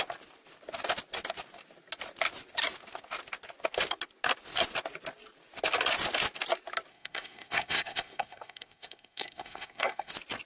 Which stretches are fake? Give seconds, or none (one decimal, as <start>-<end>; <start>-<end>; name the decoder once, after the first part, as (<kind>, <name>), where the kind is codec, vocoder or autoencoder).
6.9-10.1 (codec, SNAC)